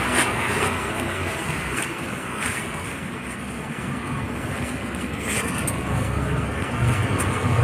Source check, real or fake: fake